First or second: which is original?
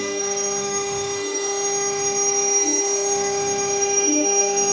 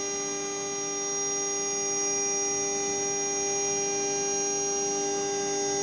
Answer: second